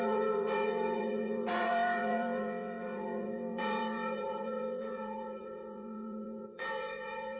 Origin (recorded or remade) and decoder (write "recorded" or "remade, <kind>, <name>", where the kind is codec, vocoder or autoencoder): remade, vocoder, Vocos